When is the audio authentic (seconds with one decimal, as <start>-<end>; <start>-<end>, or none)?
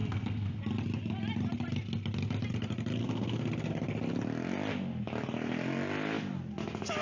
0.6-3.0; 3.7-7.0